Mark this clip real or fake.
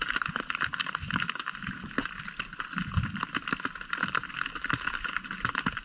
real